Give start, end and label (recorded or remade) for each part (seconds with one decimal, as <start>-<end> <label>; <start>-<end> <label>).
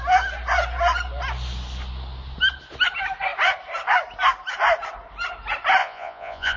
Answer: 0.0-5.8 recorded; 5.8-6.6 remade